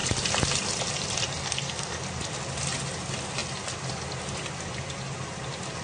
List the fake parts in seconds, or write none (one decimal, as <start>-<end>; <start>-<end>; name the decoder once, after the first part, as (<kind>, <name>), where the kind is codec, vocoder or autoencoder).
1.4-2.0 (codec, SNAC)